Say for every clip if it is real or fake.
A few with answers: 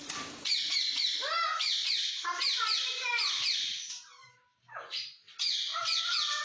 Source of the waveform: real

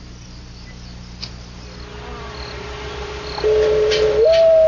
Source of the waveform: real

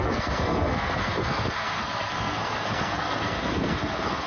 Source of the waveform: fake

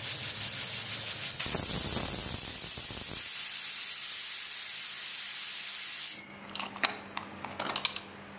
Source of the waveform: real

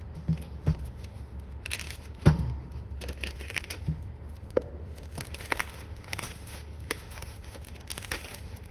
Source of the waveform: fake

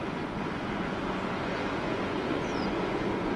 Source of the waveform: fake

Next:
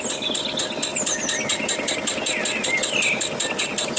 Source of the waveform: real